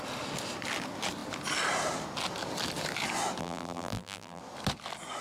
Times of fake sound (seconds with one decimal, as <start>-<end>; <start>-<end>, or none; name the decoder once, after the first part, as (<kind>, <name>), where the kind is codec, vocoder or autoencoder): 3.4-4.4 (vocoder, BigVGAN v2)